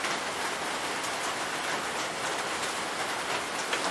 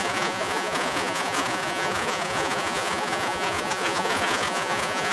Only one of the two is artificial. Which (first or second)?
second